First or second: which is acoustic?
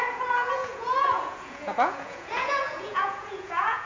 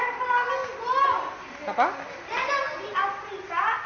second